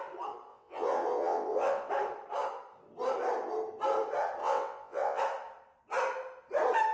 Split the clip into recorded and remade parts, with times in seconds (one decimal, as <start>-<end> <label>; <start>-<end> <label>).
0.0-0.5 recorded; 0.5-1.9 remade; 1.9-4.4 recorded; 4.4-5.2 remade; 5.2-6.9 recorded